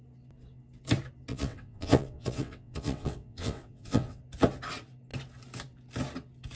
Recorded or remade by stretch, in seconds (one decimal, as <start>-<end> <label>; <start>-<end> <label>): 0.0-1.3 recorded; 1.3-4.2 remade; 4.2-6.6 recorded